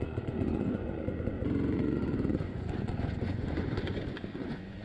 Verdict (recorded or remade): remade